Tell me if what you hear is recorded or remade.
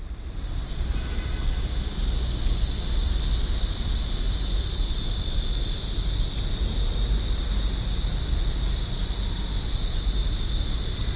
recorded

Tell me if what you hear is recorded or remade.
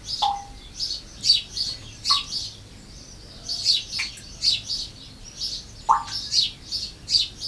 recorded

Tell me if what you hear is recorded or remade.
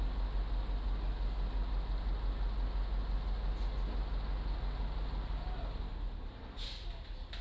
recorded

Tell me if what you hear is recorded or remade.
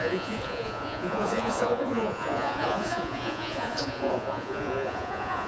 remade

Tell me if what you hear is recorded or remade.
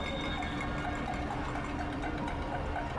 recorded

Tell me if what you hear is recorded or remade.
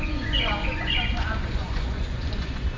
remade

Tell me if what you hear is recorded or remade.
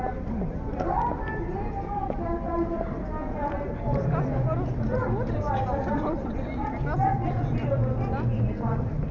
recorded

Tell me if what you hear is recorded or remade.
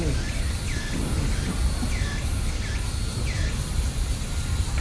recorded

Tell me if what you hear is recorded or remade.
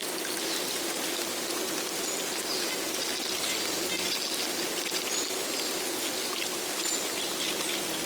recorded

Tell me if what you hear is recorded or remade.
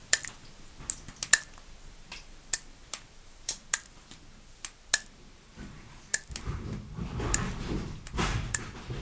recorded